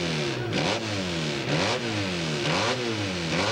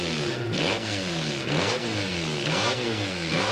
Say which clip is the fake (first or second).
second